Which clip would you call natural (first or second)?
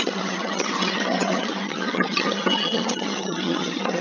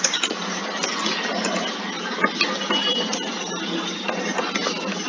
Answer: second